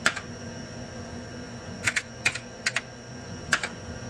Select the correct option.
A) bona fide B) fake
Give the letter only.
B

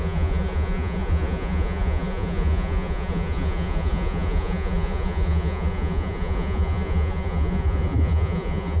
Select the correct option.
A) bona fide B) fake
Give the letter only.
B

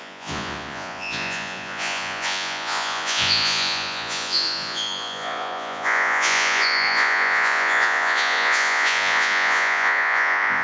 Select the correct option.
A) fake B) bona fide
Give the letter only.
A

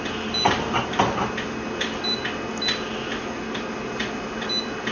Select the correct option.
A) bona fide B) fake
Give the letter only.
A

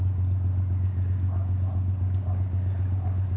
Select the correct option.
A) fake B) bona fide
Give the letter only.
B